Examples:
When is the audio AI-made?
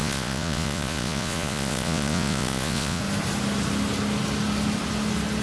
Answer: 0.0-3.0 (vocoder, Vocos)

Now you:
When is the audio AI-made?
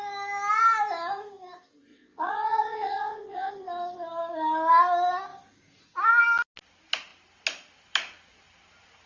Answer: 1.9-3.5 (vocoder, Vocos)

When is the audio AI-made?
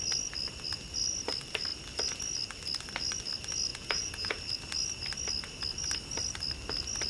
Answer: 3.7-4.5 (vocoder, Vocos)